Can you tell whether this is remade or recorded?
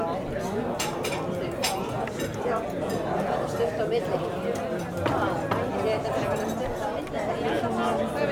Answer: recorded